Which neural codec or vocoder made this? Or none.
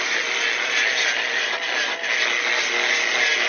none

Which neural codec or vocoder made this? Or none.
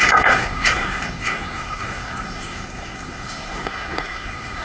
codec, SNAC